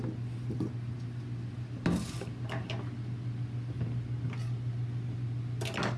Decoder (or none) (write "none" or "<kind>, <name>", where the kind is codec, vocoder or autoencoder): none